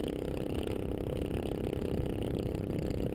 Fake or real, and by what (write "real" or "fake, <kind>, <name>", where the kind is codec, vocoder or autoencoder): fake, vocoder, BigVGAN v2